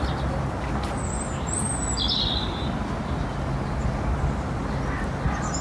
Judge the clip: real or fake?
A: real